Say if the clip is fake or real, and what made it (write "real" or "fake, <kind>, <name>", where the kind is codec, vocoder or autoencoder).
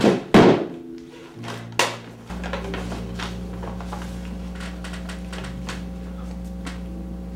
real